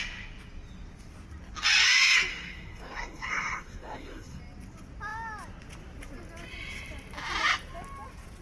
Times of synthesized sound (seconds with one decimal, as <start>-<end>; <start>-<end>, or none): 2.3-4.4